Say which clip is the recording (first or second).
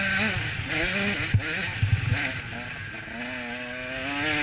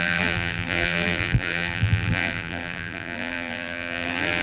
first